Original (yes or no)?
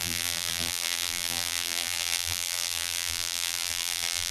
no